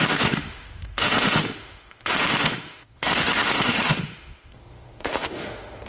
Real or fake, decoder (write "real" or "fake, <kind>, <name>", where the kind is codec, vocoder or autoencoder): fake, autoencoder, DAC-VAE